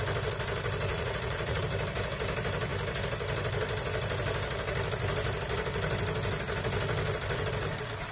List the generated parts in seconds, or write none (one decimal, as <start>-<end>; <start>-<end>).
0.9-1.6